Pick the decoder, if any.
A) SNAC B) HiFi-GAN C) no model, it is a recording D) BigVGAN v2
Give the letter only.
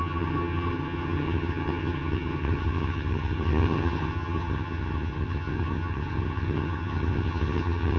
B